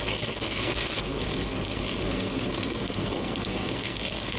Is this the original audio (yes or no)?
no